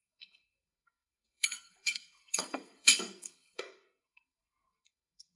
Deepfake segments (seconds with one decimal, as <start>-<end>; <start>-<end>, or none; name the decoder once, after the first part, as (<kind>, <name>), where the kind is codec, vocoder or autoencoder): 0.0-5.4 (codec, SNAC)